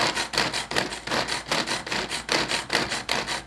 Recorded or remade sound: recorded